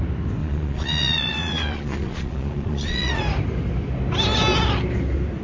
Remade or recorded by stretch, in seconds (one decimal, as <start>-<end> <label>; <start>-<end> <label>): 0.0-0.4 recorded; 0.4-3.2 remade; 3.2-5.4 recorded